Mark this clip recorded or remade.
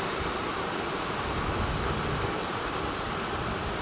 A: recorded